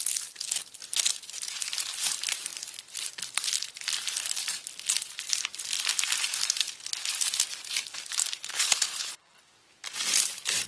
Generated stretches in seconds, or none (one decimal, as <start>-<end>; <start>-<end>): 8.4-9.4